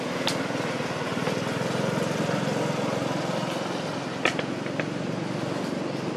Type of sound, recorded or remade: recorded